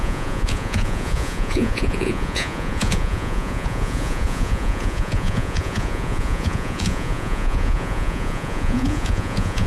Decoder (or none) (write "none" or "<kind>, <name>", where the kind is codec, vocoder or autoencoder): vocoder, Vocos